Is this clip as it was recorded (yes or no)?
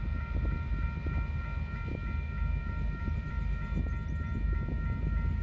yes